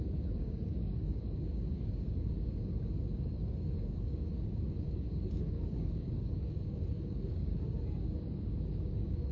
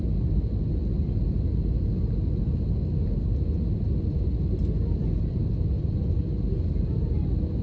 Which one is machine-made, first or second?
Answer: first